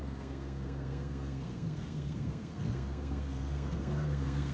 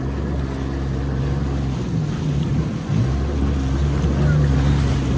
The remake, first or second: first